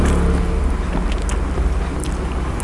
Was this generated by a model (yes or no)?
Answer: no